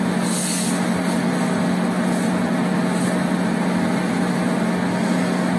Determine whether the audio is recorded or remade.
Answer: recorded